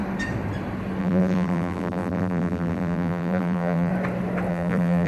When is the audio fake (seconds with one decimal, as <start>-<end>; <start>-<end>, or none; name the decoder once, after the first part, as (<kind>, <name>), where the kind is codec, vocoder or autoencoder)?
1.0-3.9 (vocoder, BigVGAN v2); 4.5-5.1